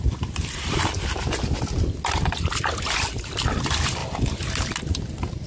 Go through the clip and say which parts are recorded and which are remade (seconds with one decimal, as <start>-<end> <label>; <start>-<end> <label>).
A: 0.0-5.5 recorded